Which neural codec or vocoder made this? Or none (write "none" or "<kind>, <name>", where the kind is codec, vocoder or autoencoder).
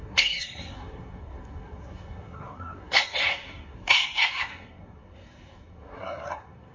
codec, SNAC